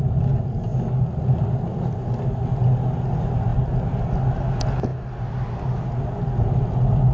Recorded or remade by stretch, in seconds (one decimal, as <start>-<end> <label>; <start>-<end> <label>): 0.0-7.1 recorded